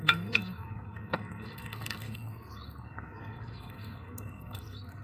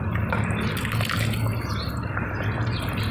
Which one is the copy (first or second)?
first